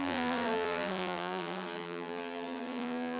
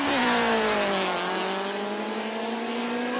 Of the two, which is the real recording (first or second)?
second